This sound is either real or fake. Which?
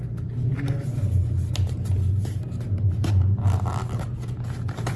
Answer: real